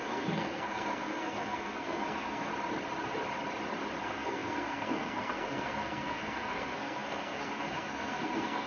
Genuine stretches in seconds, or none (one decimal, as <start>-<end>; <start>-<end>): 2.5-4.0